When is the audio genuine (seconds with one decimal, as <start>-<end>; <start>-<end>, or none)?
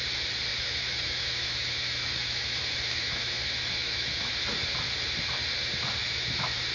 0.0-0.5; 4.3-6.0